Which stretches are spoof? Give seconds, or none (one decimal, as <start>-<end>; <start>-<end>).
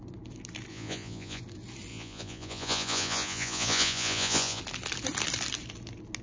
0.7-1.4; 1.9-4.6